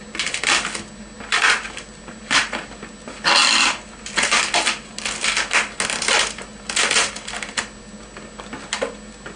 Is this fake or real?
real